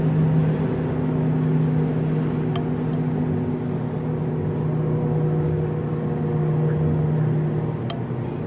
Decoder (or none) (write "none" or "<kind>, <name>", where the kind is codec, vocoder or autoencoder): none